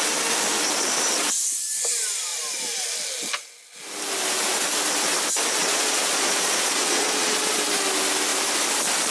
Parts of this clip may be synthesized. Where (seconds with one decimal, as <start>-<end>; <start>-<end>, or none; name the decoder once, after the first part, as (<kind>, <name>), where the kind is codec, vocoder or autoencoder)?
5.6-7.5 (vocoder, Vocos)